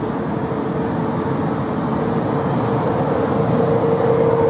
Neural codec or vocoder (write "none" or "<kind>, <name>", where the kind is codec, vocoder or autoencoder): none